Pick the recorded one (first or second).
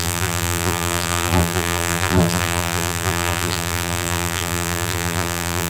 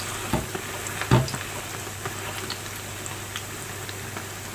second